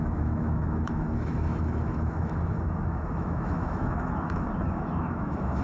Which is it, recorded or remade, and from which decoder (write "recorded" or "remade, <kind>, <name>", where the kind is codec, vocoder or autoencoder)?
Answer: remade, autoencoder, DAC-VAE